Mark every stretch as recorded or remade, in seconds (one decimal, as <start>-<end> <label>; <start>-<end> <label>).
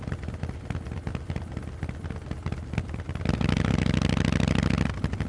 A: 0.0-5.3 recorded